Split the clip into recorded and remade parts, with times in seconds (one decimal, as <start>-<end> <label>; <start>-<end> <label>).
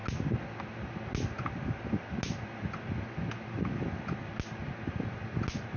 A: 0.0-5.8 recorded